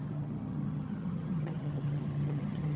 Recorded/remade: remade